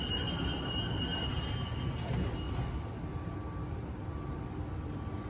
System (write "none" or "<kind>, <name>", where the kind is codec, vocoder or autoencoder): none